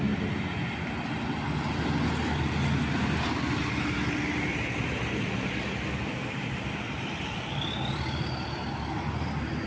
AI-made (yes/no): no